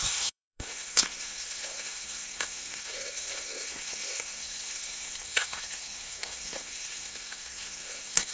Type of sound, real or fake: fake